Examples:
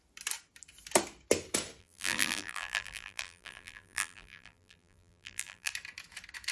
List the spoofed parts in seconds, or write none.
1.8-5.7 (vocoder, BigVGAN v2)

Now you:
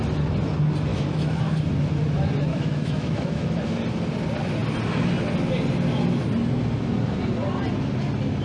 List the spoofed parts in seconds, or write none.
0.9-1.4 (autoencoder, DAC-VAE); 2.5-3.6

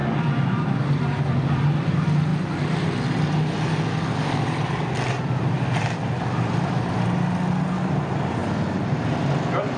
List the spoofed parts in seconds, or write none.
none

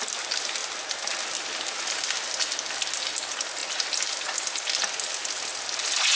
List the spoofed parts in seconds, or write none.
none

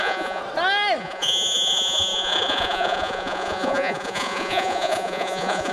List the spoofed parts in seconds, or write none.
0.0-0.4 (vocoder, Vocos); 1.0-5.7